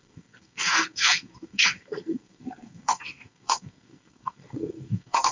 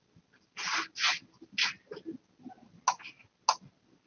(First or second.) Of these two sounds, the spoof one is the first